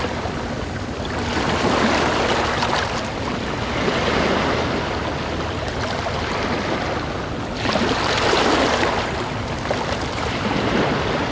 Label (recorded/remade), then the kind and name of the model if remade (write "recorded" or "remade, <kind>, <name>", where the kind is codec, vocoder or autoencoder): recorded